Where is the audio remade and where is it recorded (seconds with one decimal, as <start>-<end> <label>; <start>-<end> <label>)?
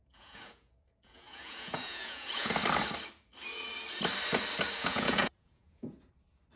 0.0-2.5 remade; 2.5-4.8 recorded; 4.8-6.1 remade; 6.1-6.6 recorded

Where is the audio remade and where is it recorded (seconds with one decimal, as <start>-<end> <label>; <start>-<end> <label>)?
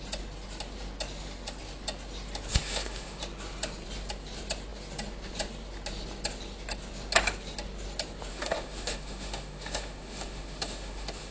0.0-2.5 recorded; 2.5-3.2 remade; 3.2-8.3 recorded; 8.3-11.3 remade